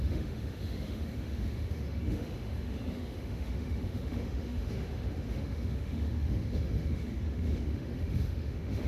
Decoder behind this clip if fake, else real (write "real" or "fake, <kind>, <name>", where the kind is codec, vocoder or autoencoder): fake, autoencoder, DAC-VAE